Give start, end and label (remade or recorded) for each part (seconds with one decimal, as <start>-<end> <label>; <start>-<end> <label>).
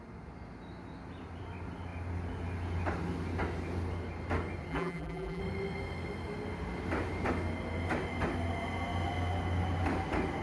0.0-4.7 recorded; 4.7-5.4 remade; 5.4-10.4 recorded